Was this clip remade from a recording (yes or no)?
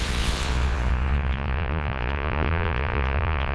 yes